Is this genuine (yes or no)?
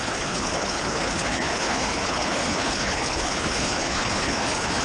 no